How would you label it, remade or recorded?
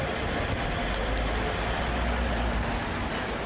recorded